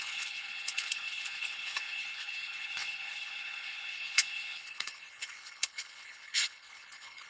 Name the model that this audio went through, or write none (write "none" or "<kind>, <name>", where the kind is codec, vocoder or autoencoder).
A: codec, HILCodec